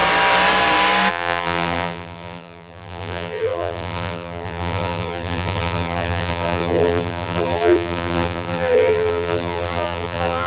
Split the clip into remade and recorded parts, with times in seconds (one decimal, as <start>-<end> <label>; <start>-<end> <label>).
0.0-1.1 recorded; 1.1-10.5 remade